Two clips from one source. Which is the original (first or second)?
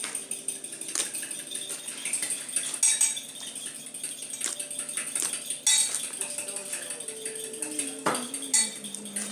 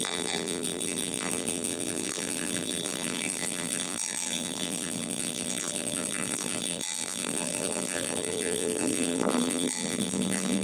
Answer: first